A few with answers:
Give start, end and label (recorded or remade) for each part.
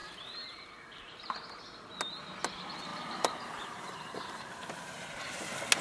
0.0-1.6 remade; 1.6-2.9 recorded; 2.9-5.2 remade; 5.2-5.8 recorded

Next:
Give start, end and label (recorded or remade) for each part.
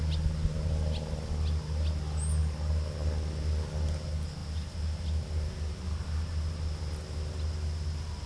0.0-8.3 recorded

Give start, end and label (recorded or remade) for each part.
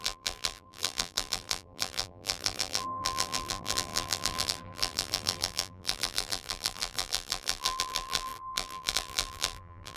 0.0-10.0 remade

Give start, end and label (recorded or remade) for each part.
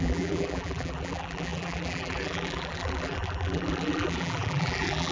0.0-5.1 remade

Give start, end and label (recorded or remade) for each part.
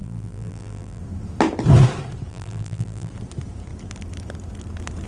0.0-1.0 remade; 1.0-2.3 recorded; 2.3-3.1 remade; 3.1-5.1 recorded